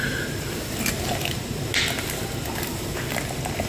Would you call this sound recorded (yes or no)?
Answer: yes